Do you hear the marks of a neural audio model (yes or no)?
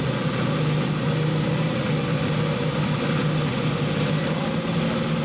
no